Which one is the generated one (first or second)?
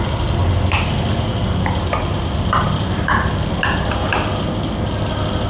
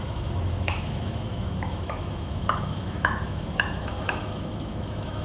second